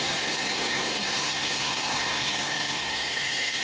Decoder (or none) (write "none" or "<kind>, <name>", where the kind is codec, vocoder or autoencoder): codec, SNAC